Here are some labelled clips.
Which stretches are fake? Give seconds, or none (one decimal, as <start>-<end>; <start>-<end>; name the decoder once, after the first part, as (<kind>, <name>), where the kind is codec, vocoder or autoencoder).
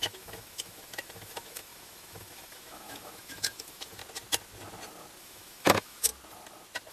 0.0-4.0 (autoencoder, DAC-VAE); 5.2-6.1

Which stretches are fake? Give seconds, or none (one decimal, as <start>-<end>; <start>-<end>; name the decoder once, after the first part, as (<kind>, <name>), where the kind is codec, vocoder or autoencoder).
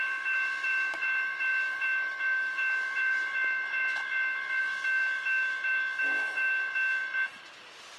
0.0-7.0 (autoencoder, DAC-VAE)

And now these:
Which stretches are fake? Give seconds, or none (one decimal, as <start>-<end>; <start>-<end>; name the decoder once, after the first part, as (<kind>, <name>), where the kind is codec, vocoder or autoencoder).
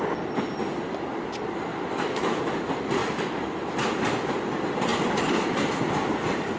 1.7-2.4 (autoencoder, DAC-VAE)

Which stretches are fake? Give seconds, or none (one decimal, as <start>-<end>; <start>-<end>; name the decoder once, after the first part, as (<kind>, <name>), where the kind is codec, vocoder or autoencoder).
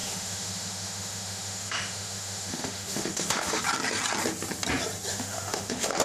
0.0-3.6 (autoencoder, DAC-VAE); 5.1-6.0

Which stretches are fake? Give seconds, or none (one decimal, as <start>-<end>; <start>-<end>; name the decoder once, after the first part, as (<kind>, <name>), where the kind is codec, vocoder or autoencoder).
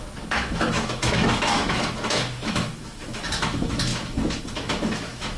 0.0-5.4 (autoencoder, DAC-VAE)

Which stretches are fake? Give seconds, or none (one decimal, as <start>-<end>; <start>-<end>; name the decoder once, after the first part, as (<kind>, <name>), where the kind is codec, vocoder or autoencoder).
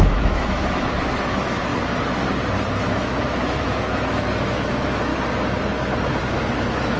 0.0-1.7 (autoencoder, DAC-VAE); 2.9-5.1; 6.2-7.0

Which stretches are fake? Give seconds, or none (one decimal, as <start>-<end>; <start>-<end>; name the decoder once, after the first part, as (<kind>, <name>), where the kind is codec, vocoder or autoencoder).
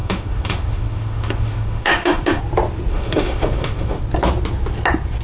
0.0-2.4 (autoencoder, DAC-VAE); 2.9-4.0